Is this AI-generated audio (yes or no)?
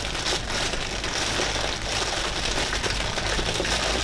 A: no